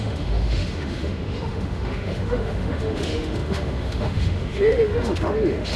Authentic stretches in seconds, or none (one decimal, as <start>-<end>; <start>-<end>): none